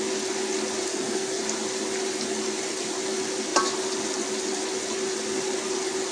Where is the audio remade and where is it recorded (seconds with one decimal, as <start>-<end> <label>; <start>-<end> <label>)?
0.0-0.9 recorded; 0.9-1.4 remade; 1.4-6.1 recorded